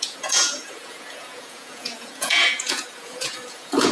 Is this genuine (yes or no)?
no